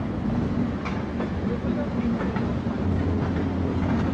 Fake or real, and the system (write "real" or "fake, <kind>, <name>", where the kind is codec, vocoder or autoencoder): real